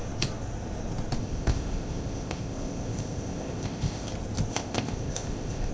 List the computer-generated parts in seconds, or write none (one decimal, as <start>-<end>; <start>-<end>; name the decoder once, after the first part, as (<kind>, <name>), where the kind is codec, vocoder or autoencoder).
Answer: 1.2-4.1 (codec, ZipCodec); 4.5-5.7